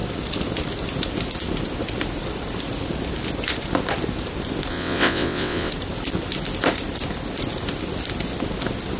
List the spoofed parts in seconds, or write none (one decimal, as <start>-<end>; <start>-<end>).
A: 4.7-5.7